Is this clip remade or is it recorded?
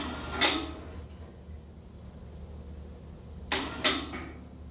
recorded